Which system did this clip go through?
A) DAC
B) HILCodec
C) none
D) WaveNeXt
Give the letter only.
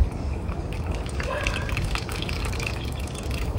A